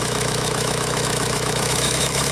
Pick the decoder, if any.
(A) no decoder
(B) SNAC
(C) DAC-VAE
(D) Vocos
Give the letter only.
C